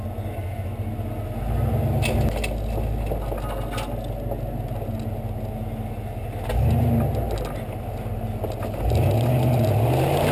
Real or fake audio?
real